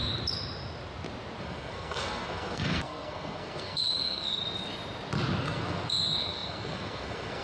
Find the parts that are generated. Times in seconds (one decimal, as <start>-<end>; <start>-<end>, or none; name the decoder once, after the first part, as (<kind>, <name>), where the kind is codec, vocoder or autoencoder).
1.4-4.4 (codec, SNAC); 5.4-7.4